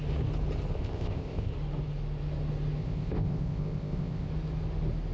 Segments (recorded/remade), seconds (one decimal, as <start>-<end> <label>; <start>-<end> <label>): 0.0-0.7 recorded; 0.7-1.5 remade; 1.5-2.8 recorded; 2.8-4.3 remade; 4.3-5.1 recorded